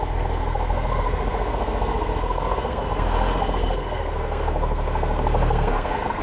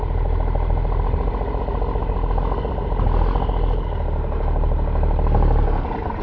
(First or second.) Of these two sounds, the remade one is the first